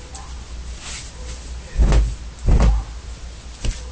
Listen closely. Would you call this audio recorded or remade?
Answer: recorded